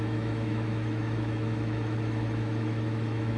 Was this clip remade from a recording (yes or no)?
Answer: yes